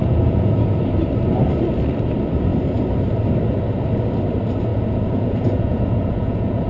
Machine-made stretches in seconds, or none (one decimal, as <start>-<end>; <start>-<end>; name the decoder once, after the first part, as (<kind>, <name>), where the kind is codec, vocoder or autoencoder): 0.0-0.8 (vocoder, Vocos); 4.7-6.7

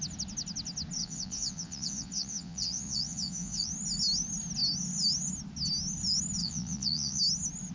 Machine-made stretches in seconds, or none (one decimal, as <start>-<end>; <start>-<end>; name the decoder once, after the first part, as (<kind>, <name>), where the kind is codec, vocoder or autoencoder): 1.0-3.7 (vocoder, Vocos); 6.4-7.2

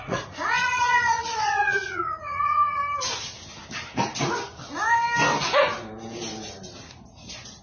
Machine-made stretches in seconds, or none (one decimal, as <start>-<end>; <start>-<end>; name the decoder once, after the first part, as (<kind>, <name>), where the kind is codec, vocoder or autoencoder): 0.0-2.8 (vocoder, Vocos)

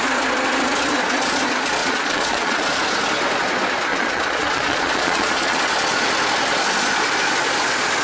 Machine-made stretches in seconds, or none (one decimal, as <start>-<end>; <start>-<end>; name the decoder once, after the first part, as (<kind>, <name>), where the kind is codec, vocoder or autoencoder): 1.8-2.7 (vocoder, Vocos); 3.9-5.6